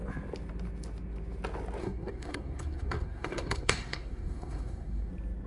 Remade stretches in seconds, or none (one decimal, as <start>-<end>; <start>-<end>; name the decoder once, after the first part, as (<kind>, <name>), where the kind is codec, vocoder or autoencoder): 1.8-5.1 (codec, SNAC)